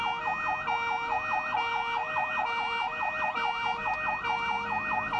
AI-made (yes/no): no